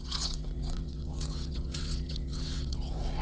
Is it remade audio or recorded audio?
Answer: remade